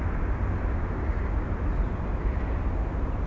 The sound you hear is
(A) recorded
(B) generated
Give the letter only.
A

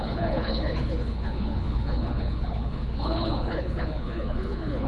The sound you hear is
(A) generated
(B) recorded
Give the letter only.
A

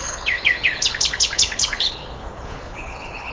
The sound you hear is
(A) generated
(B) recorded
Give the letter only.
A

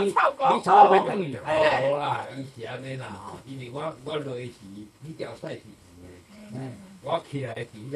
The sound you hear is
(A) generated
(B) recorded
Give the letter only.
A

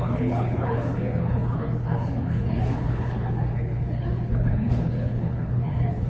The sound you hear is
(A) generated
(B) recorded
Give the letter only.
A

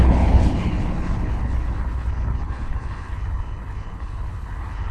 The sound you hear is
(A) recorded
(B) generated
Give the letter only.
B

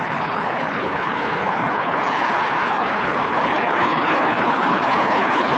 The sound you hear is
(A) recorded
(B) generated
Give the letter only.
B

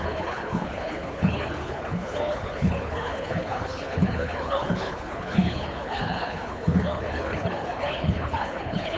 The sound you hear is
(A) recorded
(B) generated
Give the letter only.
B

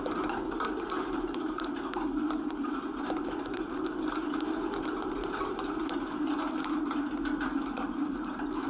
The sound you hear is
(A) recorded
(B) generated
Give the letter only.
A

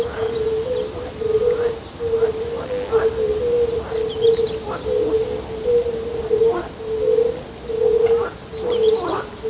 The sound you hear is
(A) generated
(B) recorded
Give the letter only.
B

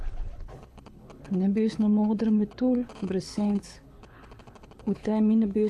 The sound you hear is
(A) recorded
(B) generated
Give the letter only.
B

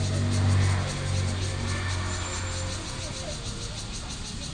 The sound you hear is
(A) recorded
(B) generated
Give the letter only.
A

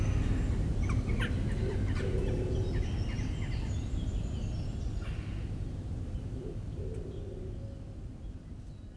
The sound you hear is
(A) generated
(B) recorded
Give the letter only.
B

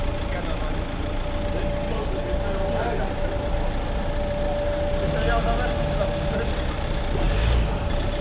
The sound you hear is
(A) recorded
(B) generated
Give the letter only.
A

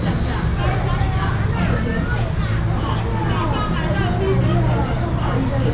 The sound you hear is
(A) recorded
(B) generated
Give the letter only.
A